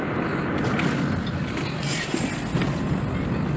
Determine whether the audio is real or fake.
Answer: real